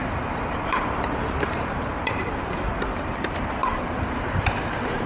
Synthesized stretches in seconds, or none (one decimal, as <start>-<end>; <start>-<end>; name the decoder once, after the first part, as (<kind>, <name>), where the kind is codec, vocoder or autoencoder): 0.0-3.1 (vocoder, BigVGAN v2); 3.6-5.1